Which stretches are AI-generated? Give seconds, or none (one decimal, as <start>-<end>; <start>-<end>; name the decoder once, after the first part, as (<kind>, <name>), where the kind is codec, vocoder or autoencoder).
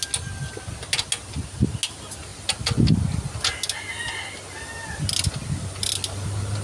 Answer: none